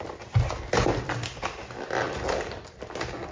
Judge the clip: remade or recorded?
recorded